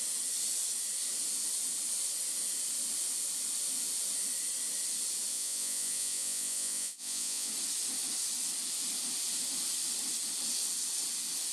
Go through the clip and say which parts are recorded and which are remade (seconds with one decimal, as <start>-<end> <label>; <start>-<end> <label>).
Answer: 0.0-5.3 recorded; 5.3-7.5 remade; 7.5-11.5 recorded